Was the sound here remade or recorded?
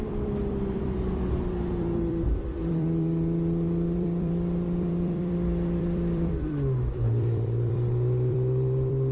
remade